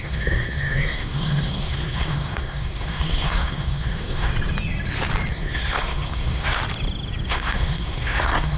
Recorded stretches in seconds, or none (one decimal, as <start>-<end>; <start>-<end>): 4.3-5.3; 6.6-7.3